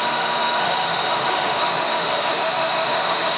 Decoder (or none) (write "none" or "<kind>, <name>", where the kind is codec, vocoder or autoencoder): autoencoder, DAC-VAE